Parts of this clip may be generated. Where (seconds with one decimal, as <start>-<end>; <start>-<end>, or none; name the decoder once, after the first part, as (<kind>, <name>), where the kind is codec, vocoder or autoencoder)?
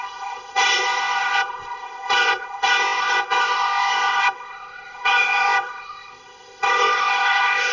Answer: 0.0-7.7 (codec, ZipCodec)